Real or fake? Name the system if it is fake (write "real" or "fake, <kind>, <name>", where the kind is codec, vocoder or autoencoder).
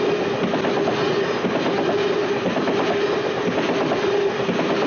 real